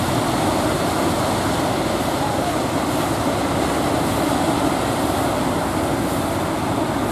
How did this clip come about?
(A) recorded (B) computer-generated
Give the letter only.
A